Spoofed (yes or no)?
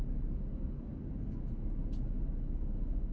no